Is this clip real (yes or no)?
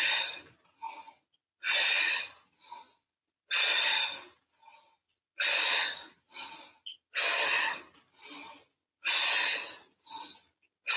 yes